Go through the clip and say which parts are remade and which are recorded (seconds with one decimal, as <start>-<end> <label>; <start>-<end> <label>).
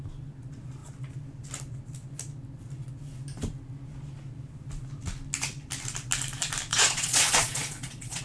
0.0-6.7 recorded; 6.7-8.2 remade